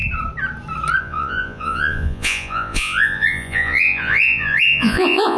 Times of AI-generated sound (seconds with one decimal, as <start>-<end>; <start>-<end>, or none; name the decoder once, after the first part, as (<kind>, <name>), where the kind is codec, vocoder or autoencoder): 1.0-5.4 (vocoder, Vocos)